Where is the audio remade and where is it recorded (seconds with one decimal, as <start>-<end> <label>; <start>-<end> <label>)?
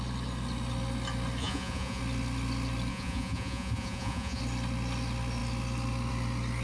0.0-1.4 recorded; 1.4-2.0 remade; 2.0-2.9 recorded; 2.9-4.4 remade; 4.4-6.6 recorded